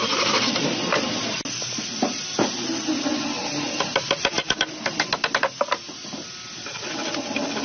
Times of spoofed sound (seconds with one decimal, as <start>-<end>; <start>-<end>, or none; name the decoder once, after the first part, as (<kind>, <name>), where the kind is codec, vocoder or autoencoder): none